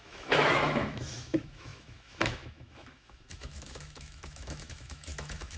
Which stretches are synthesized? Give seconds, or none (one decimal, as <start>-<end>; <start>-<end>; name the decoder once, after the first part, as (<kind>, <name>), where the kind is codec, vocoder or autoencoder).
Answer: 0.0-5.6 (autoencoder, DAC-VAE)